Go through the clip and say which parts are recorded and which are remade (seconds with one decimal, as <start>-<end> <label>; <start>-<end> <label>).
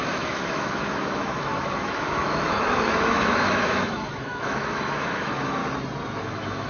0.0-5.6 remade; 5.6-6.2 recorded; 6.2-6.7 remade